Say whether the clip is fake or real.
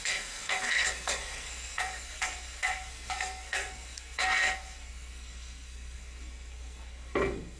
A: fake